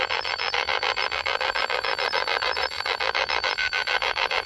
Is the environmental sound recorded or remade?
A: remade